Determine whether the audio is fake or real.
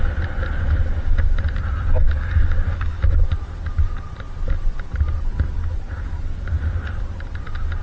real